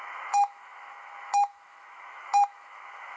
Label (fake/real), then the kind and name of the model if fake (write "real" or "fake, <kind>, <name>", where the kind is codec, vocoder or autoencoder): fake, autoencoder, DAC-VAE